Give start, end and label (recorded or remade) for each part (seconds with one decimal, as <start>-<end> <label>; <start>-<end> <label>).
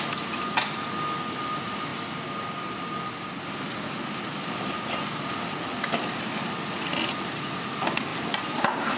0.0-8.1 recorded; 8.1-9.0 remade